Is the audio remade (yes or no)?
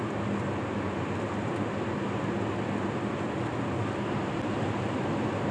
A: no